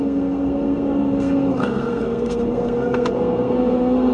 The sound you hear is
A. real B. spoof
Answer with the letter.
B